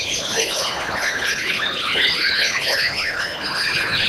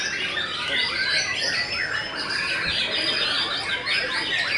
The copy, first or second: first